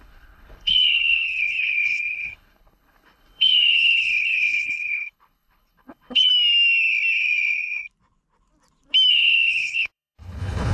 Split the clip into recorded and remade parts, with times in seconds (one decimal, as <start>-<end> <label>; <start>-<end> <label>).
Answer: 0.0-6.3 remade; 6.3-9.1 recorded; 9.1-10.7 remade